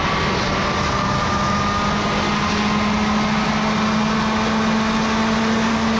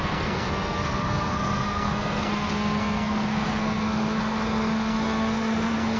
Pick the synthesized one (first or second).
second